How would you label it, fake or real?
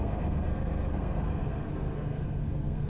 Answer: fake